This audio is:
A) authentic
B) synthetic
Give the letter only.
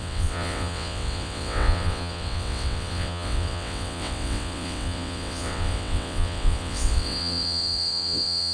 B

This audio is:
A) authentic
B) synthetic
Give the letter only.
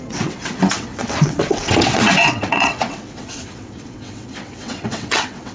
B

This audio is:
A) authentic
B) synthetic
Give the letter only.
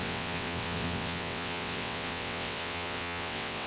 B